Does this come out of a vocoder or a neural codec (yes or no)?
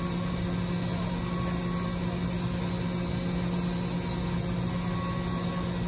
no